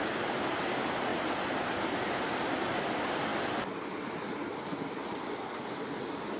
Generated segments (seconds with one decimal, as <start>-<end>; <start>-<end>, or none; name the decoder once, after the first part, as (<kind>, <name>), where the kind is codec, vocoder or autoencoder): none